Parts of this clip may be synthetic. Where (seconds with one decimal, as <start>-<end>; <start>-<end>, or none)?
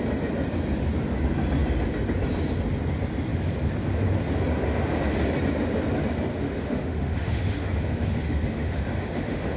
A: 6.3-9.6